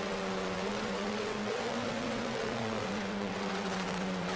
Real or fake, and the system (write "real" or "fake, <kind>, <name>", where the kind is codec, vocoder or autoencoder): fake, vocoder, WaveNeXt